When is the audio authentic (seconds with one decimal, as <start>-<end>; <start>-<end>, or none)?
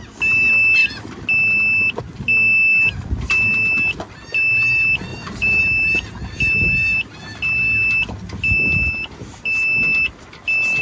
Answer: 0.0-5.1; 5.6-10.8